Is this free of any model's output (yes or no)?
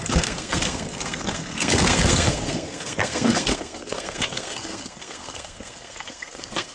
no